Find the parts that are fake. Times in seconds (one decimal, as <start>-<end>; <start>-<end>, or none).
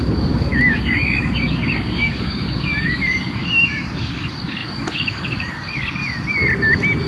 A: 0.0-6.0